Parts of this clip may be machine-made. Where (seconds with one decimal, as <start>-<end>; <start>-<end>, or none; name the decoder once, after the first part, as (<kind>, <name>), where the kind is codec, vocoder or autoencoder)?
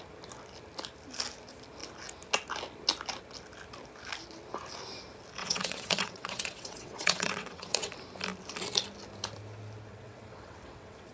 5.4-7.9 (vocoder, WaveNeXt); 9.9-11.1